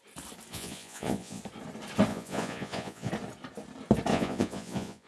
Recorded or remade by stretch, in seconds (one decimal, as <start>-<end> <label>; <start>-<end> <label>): 0.0-0.5 recorded; 0.5-1.4 remade; 1.4-2.1 recorded; 2.1-3.1 remade; 3.1-4.1 recorded; 4.1-5.1 remade